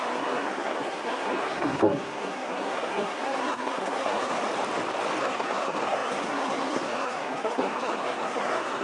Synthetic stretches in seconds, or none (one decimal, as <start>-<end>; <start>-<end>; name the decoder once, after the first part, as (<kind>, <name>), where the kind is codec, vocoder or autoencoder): 0.0-4.4 (codec, SNAC); 5.2-8.8